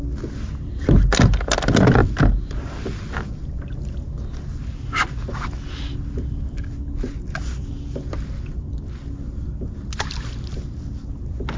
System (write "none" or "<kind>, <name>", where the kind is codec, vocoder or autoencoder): none